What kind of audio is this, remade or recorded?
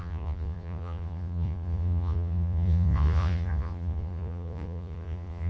remade